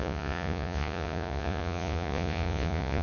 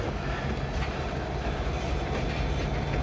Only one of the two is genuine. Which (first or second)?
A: second